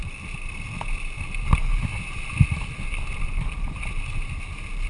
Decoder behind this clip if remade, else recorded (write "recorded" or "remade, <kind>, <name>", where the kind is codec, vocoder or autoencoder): recorded